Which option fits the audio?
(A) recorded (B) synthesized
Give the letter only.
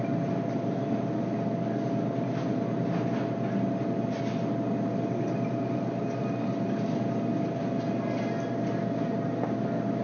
A